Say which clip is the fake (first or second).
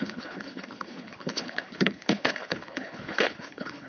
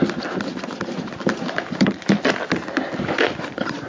first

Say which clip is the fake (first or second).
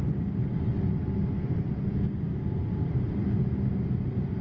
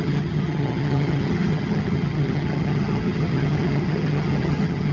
second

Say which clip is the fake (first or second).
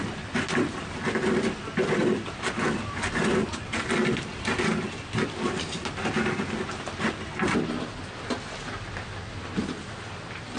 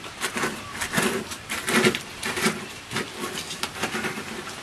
second